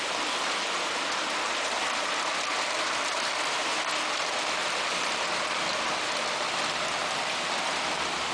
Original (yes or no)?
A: yes